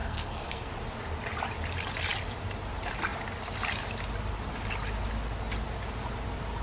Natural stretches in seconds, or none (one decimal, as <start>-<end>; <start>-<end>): 0.7-6.6